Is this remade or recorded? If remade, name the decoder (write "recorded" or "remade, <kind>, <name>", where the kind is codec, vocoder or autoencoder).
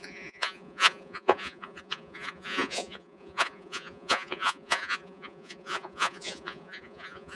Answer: remade, vocoder, Vocos